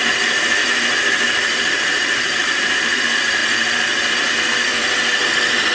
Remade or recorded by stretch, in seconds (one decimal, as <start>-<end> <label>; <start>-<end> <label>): 0.0-0.6 recorded; 0.6-3.0 remade; 3.0-5.7 recorded